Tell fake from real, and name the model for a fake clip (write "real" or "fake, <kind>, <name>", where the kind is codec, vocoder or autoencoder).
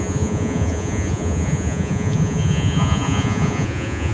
fake, vocoder, Vocos